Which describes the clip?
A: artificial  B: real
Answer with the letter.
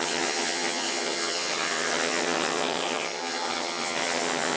A